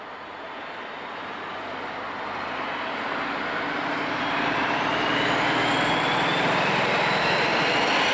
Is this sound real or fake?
real